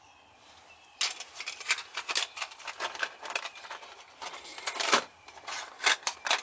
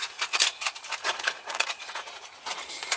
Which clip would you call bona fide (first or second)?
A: first